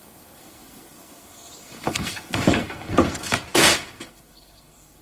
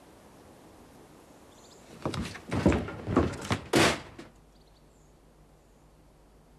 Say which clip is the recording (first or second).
second